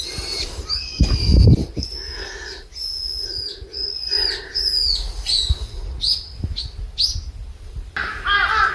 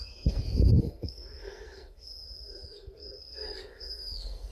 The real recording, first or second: first